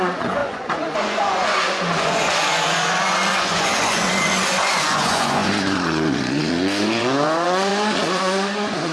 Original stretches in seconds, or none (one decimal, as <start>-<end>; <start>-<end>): 7.7-8.2